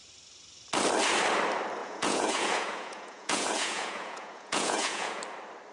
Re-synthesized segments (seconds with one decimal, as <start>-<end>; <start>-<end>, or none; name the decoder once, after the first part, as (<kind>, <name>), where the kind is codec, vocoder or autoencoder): 1.8-5.2 (vocoder, Vocos)